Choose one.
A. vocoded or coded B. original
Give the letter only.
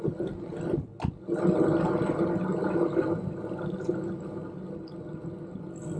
B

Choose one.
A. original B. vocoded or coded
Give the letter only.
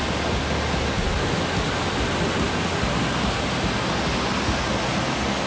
A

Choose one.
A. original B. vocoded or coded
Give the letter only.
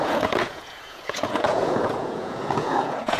B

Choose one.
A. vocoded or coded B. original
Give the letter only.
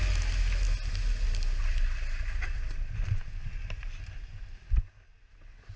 B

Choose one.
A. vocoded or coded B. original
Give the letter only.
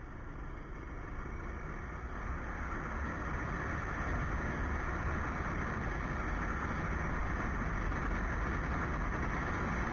B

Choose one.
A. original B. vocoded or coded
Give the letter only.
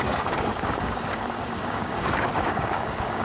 B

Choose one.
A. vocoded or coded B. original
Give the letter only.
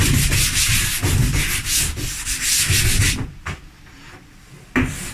B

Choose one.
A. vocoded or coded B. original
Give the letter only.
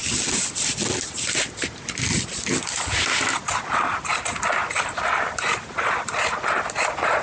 B